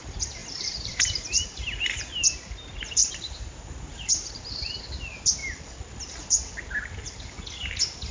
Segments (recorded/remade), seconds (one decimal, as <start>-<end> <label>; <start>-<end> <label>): 0.0-0.4 recorded; 0.4-2.1 remade; 2.1-3.0 recorded; 3.0-4.8 remade; 4.8-8.1 recorded